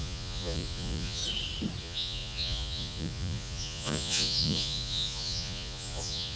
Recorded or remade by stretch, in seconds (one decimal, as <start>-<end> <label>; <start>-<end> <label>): 0.0-1.2 remade; 1.2-1.8 recorded; 1.8-6.4 remade